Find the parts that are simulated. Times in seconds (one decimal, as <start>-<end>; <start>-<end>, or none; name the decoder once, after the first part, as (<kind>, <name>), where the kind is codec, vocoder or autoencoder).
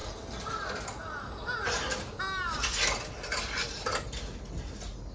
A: none